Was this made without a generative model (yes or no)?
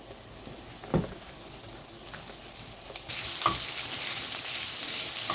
yes